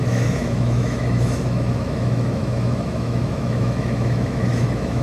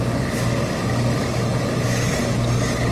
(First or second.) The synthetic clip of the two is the first